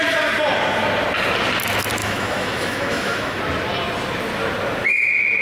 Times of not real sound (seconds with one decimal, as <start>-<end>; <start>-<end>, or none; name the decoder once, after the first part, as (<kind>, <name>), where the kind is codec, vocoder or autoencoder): 2.0-3.4 (autoencoder, DAC-VAE)